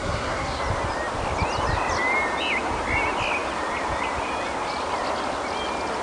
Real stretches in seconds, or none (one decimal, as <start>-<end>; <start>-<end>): 0.6-6.0